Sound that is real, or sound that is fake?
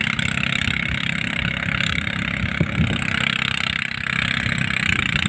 real